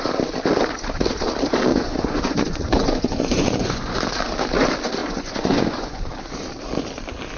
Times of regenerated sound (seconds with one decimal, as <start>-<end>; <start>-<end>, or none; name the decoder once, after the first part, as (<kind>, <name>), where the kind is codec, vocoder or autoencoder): 1.7-4.0 (vocoder, Vocos); 5.0-6.0